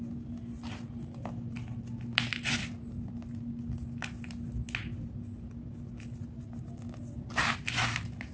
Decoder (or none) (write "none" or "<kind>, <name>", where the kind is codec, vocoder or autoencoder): none